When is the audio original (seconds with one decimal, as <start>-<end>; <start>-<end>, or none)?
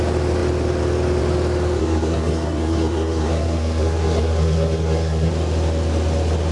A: 0.0-1.8; 5.3-6.5